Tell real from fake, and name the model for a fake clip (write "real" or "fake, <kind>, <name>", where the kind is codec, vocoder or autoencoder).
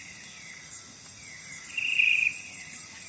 fake, vocoder, Vocos